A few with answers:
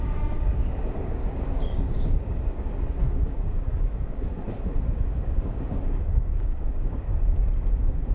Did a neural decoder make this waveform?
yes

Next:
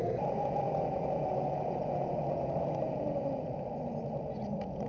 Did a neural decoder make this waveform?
yes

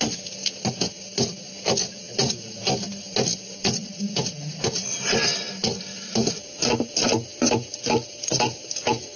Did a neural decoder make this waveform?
no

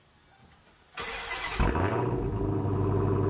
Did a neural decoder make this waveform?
no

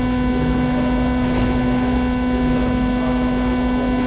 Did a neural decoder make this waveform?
no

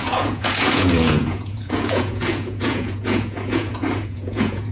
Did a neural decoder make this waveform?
yes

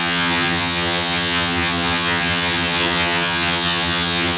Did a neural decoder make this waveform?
yes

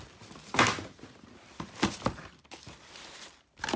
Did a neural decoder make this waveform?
yes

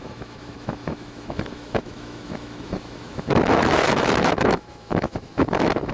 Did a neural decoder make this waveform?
yes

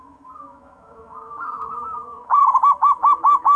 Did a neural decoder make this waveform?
yes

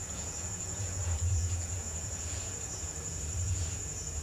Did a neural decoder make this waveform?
yes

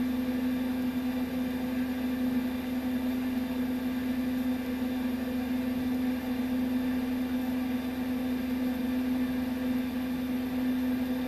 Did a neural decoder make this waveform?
no